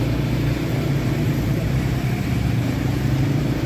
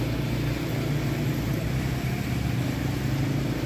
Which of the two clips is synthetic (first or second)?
first